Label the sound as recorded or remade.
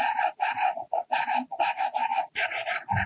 remade